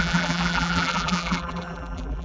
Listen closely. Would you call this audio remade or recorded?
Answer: remade